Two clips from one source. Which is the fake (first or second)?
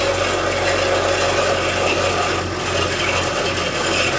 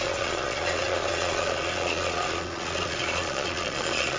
second